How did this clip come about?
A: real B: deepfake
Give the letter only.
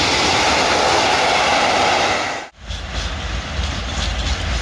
A